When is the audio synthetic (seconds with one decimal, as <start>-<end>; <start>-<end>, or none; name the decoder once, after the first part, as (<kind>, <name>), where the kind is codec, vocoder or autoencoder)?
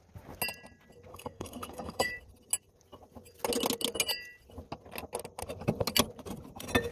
1.1-2.1 (codec, SNAC)